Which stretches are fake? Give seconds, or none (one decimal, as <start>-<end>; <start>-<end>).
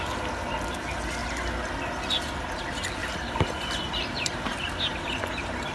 3.0-5.3